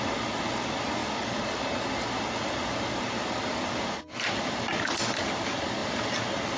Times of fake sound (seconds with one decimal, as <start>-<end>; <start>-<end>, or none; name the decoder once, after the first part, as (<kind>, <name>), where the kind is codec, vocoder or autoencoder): none